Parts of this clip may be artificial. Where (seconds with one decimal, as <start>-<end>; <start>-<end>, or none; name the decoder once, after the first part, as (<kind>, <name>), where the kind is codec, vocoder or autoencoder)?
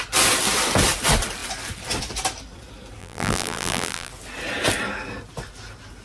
3.0-4.1 (vocoder, BigVGAN v2)